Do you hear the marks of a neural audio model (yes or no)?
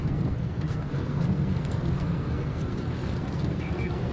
yes